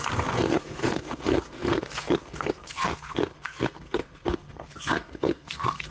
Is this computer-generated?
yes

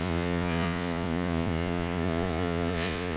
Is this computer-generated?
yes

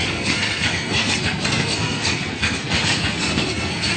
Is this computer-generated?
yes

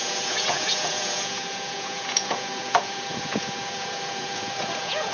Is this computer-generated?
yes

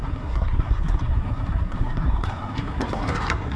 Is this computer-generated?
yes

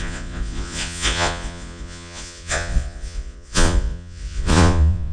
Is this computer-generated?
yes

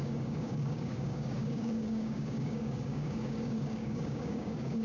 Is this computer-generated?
yes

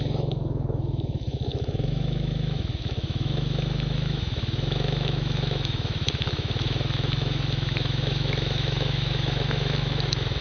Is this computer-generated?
yes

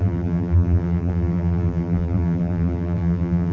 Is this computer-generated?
yes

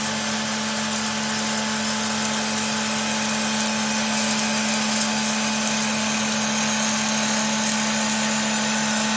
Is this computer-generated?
no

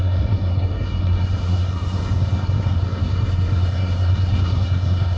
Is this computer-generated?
yes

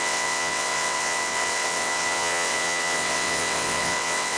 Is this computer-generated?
yes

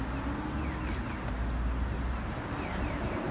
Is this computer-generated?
no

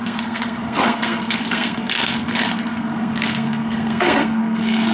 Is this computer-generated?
yes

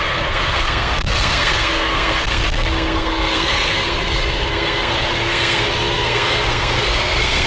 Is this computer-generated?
yes